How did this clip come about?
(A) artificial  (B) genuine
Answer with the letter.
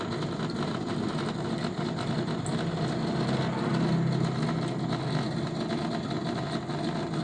B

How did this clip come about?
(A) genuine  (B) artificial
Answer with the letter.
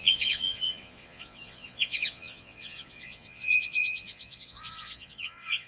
B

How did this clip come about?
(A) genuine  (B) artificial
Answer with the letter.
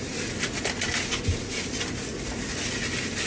A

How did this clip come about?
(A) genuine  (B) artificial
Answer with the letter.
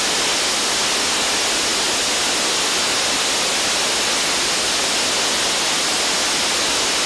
A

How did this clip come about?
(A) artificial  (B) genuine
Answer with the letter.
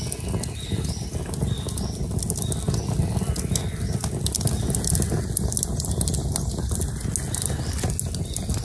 B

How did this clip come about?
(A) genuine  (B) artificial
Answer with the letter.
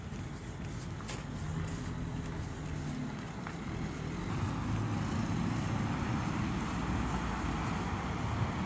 A